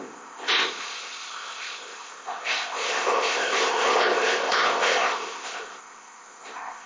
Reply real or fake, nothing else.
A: fake